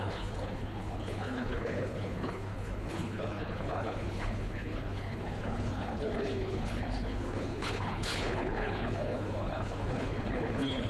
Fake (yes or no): yes